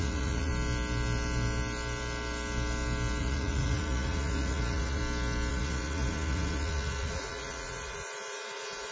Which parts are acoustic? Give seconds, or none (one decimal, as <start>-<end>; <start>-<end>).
0.5-3.2; 5.0-5.5